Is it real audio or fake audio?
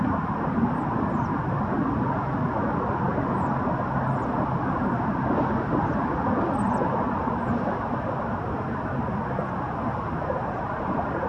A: real